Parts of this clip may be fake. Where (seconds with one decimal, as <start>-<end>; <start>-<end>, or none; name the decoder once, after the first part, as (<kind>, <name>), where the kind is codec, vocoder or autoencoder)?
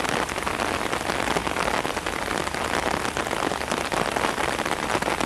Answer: none